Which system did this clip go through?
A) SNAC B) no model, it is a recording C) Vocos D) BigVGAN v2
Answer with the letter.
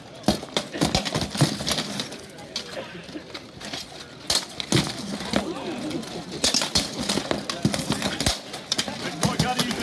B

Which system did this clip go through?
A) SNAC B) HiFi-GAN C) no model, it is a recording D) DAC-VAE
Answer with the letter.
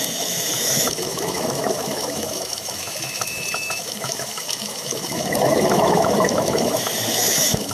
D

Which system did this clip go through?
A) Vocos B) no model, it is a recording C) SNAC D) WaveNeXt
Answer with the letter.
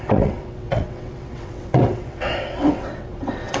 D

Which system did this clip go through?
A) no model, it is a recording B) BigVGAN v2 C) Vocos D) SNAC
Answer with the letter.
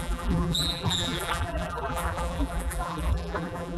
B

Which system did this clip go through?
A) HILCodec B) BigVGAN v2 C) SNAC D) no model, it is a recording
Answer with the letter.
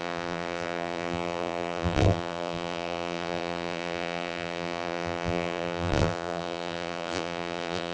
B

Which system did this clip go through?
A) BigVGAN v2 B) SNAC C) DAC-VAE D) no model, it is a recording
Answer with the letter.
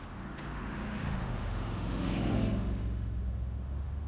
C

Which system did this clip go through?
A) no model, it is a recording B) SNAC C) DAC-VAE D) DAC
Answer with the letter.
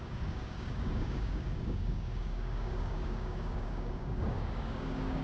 D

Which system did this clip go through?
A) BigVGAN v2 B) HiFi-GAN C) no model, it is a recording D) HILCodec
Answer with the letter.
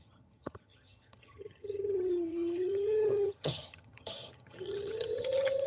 B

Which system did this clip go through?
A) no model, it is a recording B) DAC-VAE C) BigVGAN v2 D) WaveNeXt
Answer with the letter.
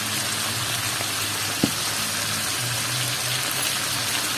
A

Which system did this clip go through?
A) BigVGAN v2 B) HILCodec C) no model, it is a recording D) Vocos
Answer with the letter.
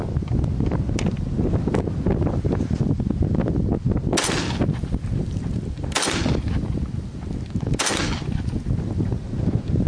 C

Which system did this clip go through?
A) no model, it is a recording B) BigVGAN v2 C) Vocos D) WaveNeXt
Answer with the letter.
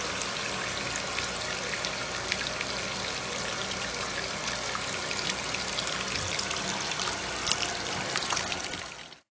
A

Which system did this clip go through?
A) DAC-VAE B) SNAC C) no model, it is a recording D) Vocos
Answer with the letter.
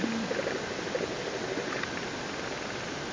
C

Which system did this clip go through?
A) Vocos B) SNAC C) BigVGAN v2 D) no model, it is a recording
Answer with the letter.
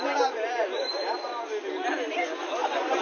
D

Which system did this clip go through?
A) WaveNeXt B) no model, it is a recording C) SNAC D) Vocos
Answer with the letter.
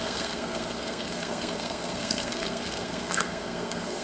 C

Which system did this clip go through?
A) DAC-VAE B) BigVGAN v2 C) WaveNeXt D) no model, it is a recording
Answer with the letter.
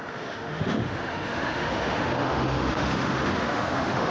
A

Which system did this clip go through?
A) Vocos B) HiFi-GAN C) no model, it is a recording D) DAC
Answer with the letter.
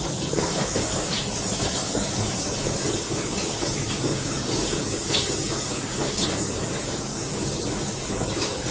D